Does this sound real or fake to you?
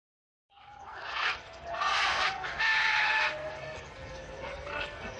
fake